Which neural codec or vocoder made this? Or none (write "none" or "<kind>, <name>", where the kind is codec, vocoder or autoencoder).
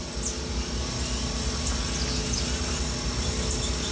none